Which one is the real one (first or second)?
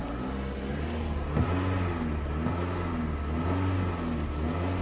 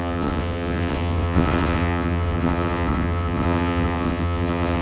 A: first